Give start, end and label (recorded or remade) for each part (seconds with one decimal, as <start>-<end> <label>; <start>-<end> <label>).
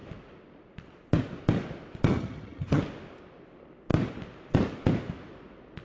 0.0-2.1 recorded; 2.1-2.8 remade; 2.8-5.8 recorded